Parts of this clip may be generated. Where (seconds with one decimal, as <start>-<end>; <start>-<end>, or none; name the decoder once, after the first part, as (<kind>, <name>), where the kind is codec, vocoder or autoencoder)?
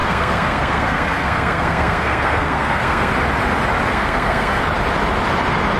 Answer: 0.0-3.1 (codec, SNAC); 3.9-4.6